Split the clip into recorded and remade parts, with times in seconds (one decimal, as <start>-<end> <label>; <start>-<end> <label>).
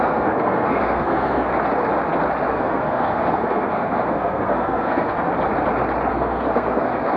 0.0-1.5 remade; 1.5-2.5 recorded; 2.5-5.3 remade; 5.3-6.1 recorded; 6.1-7.2 remade